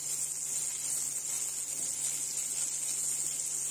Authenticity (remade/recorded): recorded